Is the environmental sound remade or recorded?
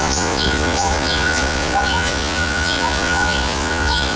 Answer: remade